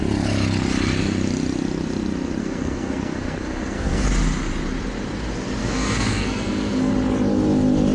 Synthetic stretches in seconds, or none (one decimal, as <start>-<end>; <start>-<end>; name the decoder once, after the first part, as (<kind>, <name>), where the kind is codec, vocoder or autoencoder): 2.4-4.1 (codec, SNAC); 5.6-6.9